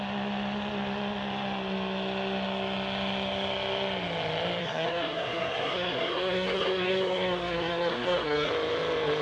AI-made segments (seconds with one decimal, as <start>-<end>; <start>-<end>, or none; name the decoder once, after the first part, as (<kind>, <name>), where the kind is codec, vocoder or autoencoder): 4.6-8.5 (codec, SNAC)